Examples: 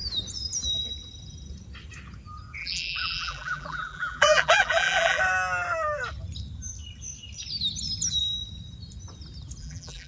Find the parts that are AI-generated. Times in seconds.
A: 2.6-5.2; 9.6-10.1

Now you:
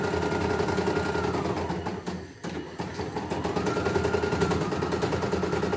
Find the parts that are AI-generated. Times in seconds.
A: none

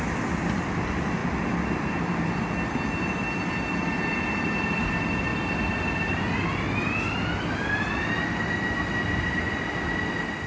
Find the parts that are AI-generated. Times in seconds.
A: 1.2-2.4